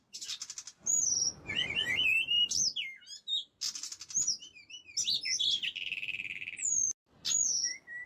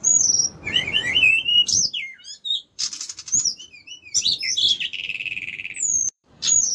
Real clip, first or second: first